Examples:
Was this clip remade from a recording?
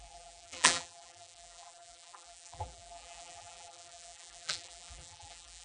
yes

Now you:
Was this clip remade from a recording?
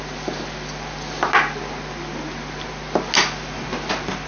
no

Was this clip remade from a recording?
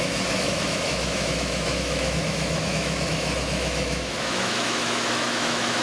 yes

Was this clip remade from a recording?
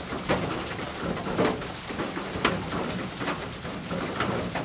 no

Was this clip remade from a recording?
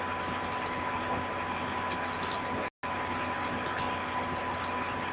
no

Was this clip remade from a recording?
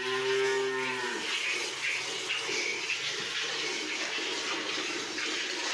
no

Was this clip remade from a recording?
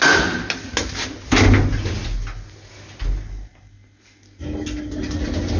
no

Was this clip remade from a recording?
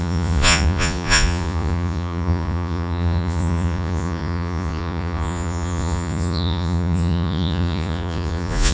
yes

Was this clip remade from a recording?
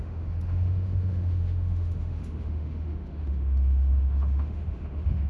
yes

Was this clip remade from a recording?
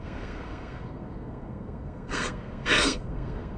yes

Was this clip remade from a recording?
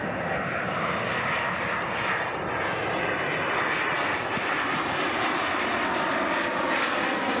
no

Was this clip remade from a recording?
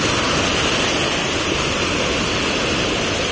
no